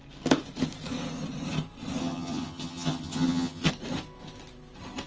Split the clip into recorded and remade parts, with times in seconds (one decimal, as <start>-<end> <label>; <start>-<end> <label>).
0.0-2.0 recorded; 2.0-3.7 remade; 3.7-5.1 recorded